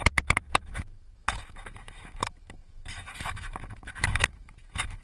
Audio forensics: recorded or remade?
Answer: remade